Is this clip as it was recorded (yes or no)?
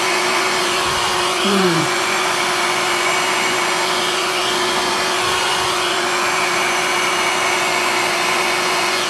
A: no